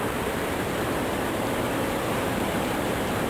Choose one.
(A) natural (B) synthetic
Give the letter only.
B